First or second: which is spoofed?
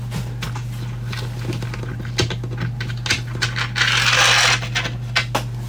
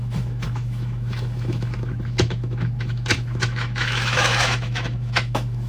second